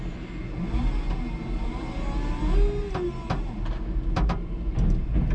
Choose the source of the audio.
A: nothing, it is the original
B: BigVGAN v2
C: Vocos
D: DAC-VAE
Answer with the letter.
A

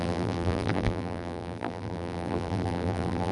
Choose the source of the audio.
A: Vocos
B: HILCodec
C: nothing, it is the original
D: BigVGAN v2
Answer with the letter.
D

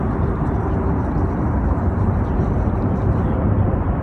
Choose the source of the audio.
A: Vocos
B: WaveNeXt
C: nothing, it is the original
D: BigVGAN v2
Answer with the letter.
D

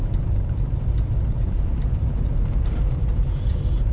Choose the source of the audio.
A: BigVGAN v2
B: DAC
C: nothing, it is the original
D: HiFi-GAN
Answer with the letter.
A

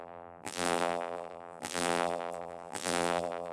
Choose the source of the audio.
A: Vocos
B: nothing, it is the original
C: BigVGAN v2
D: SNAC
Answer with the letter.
C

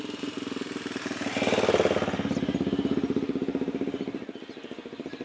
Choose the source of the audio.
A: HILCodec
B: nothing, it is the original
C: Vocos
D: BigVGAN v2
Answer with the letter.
B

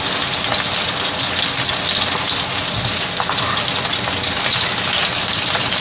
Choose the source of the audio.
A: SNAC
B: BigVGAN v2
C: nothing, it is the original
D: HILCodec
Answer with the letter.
C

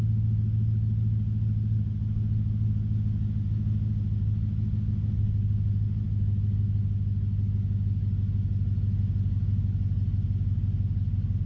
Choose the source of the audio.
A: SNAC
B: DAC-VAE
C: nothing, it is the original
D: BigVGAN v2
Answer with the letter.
C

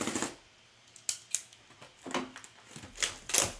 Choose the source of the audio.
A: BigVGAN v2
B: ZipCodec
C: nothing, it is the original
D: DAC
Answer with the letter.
C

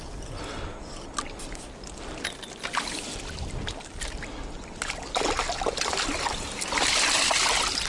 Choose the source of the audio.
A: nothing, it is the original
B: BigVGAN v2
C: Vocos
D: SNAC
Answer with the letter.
A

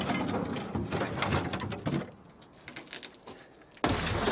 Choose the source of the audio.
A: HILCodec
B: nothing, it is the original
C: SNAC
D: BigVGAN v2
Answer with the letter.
B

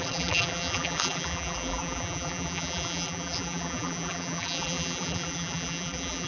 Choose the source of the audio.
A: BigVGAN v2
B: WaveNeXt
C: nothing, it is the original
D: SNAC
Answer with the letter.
A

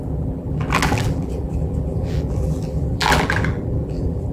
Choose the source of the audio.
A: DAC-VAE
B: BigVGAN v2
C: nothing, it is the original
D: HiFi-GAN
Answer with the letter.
B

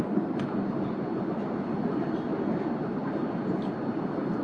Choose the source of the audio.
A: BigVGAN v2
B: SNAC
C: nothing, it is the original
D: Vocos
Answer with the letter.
C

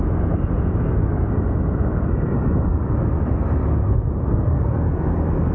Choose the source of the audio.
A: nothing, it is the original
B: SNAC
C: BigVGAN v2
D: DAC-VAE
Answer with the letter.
A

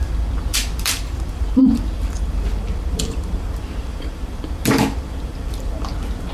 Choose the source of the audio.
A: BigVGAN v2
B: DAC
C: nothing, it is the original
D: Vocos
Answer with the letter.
A